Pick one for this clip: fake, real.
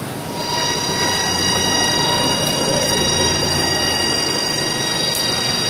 real